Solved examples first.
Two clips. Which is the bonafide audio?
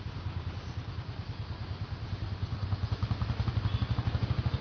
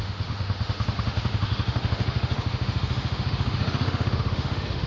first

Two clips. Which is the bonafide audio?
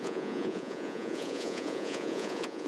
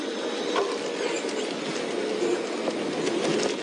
second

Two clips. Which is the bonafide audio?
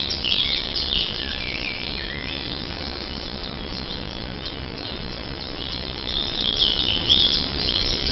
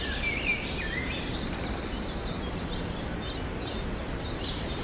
second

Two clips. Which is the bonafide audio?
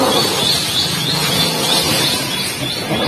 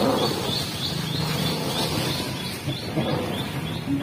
second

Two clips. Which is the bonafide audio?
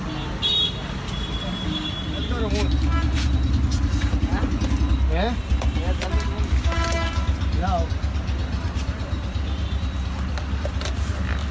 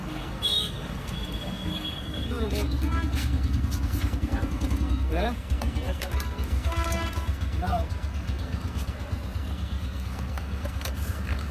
first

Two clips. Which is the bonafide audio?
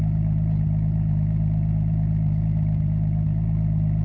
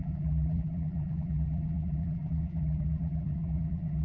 first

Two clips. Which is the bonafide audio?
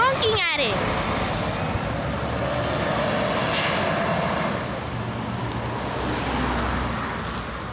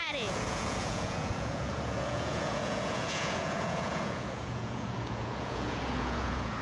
first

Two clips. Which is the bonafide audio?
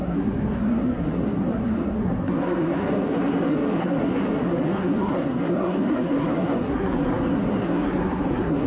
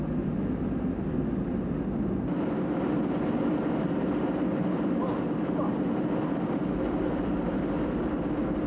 second